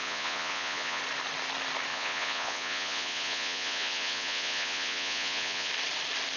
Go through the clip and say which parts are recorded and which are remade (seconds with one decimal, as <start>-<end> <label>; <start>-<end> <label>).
0.0-1.0 remade; 1.0-1.9 recorded; 1.9-5.7 remade; 5.7-6.4 recorded